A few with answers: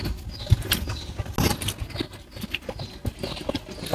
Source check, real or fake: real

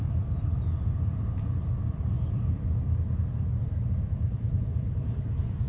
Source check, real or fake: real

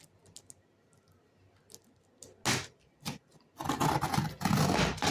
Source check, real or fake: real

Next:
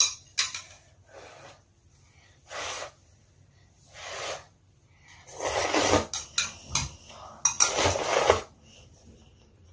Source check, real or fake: real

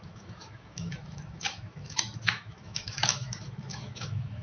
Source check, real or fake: fake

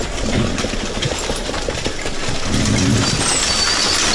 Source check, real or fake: real